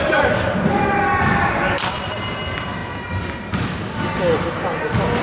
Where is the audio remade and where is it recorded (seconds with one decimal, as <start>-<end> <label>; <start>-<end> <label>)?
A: 0.0-5.2 recorded